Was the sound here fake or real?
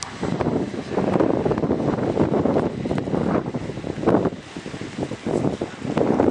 real